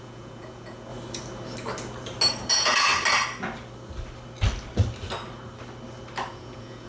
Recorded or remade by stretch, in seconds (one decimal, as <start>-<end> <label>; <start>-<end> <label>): 0.0-0.9 remade; 0.9-2.5 recorded; 2.5-2.9 remade; 2.9-6.3 recorded; 6.3-6.9 remade